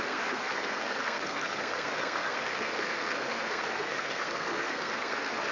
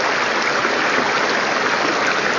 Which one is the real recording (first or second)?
second